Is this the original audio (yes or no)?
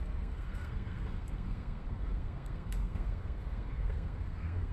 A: no